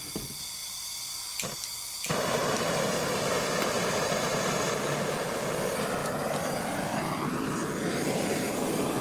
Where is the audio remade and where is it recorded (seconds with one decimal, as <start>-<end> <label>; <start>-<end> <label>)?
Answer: 0.0-2.4 recorded; 2.4-4.6 remade; 4.6-9.0 recorded